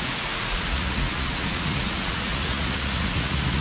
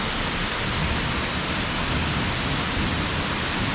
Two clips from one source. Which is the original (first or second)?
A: second